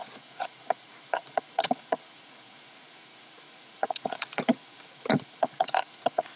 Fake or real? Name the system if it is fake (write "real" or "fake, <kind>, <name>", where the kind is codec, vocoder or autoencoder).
fake, vocoder, Vocos